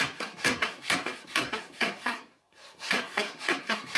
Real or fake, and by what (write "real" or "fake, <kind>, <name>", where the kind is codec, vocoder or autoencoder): fake, codec, SNAC